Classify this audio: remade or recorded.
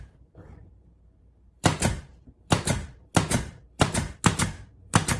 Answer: remade